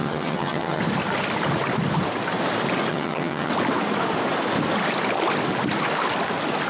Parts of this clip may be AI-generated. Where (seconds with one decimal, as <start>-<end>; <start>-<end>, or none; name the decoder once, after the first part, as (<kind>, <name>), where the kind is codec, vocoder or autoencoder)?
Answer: 0.0-0.8 (vocoder, HiFi-GAN); 2.9-3.5